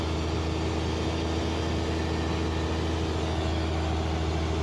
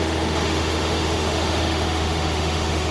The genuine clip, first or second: first